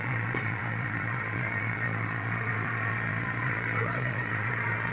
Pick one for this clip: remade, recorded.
remade